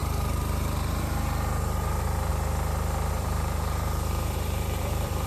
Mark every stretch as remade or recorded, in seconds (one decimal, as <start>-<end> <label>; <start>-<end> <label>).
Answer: 0.0-2.3 remade; 2.3-3.1 recorded; 3.1-5.3 remade

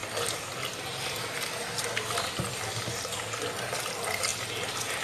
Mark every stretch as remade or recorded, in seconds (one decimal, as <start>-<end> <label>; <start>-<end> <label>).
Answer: 0.0-5.0 recorded

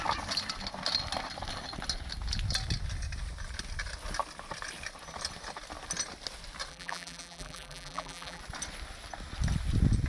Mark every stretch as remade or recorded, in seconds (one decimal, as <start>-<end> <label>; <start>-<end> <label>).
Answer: 0.0-6.7 recorded; 6.7-8.4 remade; 8.4-10.1 recorded

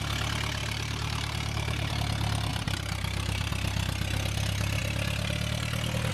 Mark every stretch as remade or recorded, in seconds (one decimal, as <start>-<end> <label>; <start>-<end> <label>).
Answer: 0.0-0.6 recorded; 0.6-1.9 remade; 1.9-2.5 recorded; 2.5-3.5 remade; 3.5-6.1 recorded

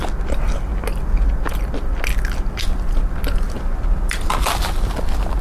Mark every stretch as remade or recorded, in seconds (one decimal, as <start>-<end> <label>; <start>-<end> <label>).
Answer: 0.0-5.4 recorded

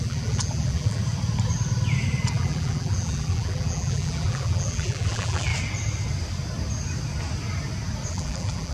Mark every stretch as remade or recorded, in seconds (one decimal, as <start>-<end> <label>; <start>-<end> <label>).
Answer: 0.0-1.0 remade; 1.0-2.3 recorded; 2.3-5.5 remade; 5.5-8.1 recorded; 8.1-8.7 remade

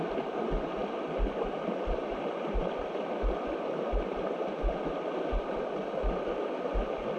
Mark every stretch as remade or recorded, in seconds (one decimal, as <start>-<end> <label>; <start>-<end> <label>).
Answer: 0.0-0.8 recorded; 0.8-4.9 remade; 4.9-7.2 recorded

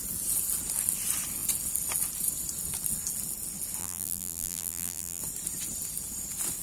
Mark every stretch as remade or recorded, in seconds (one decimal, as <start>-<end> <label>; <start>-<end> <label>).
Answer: 0.0-3.8 recorded; 3.8-5.2 remade; 5.2-6.6 recorded